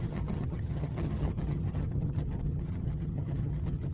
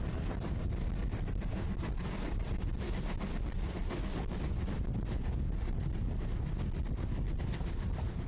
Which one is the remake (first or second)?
first